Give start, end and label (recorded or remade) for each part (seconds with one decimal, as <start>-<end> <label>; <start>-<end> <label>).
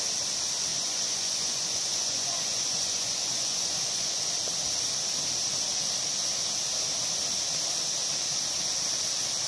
0.0-0.7 recorded; 0.7-4.2 remade; 4.2-9.5 recorded